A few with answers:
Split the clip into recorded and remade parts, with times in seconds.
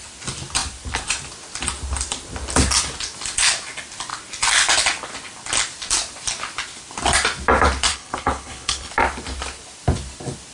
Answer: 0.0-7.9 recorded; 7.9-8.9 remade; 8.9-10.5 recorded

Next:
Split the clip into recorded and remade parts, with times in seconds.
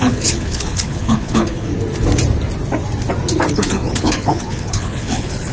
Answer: 0.0-1.7 remade; 1.7-3.5 recorded; 3.5-5.5 remade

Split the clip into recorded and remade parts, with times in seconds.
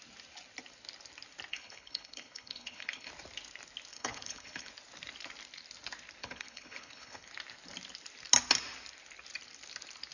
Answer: 0.0-1.5 recorded; 1.5-3.1 remade; 3.1-3.9 recorded; 3.9-4.7 remade; 4.7-6.2 recorded; 6.2-7.3 remade; 7.3-10.1 recorded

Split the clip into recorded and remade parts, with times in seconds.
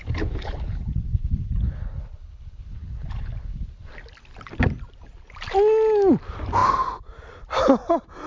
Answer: 0.0-3.9 remade; 3.9-8.3 recorded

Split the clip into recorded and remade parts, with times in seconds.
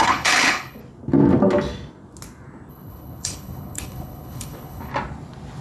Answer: 0.0-0.8 remade; 0.8-2.7 recorded; 2.7-4.9 remade; 4.9-5.6 recorded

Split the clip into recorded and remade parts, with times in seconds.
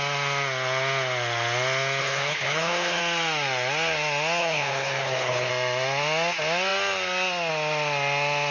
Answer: 0.0-2.0 recorded; 2.0-3.0 remade; 3.0-4.4 recorded; 4.4-5.5 remade; 5.5-8.5 recorded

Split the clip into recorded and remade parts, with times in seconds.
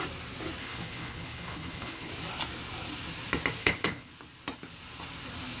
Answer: 0.0-0.6 recorded; 0.6-2.1 remade; 2.1-3.6 recorded; 3.6-4.1 remade; 4.1-5.6 recorded